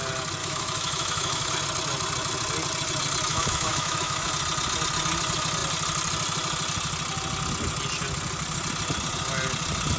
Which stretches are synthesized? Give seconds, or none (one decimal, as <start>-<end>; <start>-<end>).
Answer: 0.4-1.5; 3.3-4.3